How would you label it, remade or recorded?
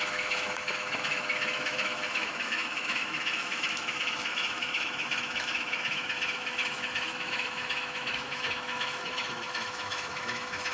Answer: remade